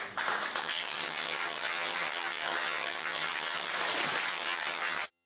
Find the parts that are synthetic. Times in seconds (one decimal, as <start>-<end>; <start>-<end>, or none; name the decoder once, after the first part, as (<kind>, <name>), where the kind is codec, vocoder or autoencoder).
0.6-3.7 (vocoder, HiFi-GAN); 4.3-5.3